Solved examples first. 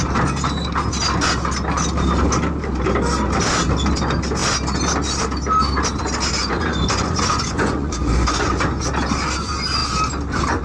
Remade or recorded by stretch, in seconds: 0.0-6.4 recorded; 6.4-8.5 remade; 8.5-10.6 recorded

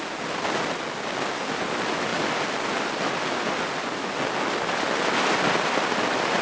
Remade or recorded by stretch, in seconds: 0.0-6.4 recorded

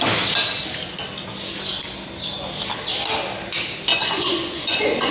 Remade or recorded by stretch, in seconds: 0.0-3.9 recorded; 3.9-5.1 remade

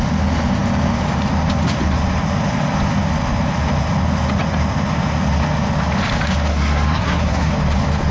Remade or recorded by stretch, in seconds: 0.0-6.5 recorded; 6.5-7.5 remade; 7.5-8.1 recorded

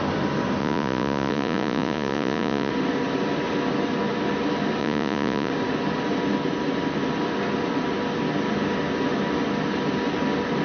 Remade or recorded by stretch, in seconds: 0.0-0.6 recorded; 0.6-2.7 remade; 2.7-4.8 recorded; 4.8-5.5 remade; 5.5-10.6 recorded

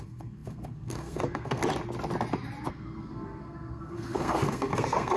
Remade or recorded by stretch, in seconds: 0.0-1.6 remade; 1.6-2.7 recorded; 2.7-5.2 remade

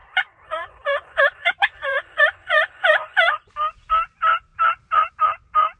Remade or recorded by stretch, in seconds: 0.0-3.5 remade; 3.5-5.8 recorded

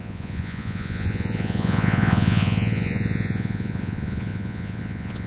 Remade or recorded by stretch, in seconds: 0.0-5.3 remade